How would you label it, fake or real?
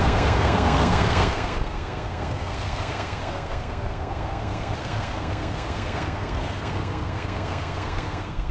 fake